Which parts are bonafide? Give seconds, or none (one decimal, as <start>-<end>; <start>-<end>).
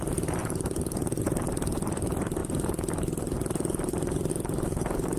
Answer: 0.0-0.4; 1.2-5.2